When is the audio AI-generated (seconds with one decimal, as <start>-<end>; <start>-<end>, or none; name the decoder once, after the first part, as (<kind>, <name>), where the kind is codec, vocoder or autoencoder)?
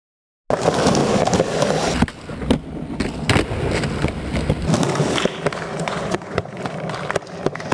5.7-6.6 (vocoder, Vocos)